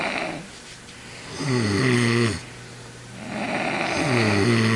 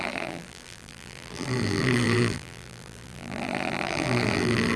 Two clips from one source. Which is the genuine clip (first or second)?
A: first